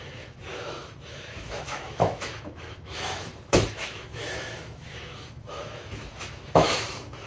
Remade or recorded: remade